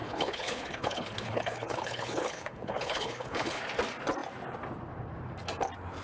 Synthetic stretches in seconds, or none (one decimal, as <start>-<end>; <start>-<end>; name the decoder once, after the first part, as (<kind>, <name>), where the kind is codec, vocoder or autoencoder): 0.0-3.6 (codec, HILCodec)